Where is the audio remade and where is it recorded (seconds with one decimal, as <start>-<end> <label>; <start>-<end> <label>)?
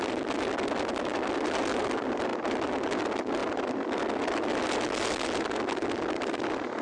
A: 0.0-6.8 recorded